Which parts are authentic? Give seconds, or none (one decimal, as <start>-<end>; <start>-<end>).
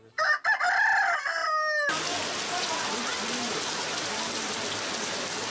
0.0-5.5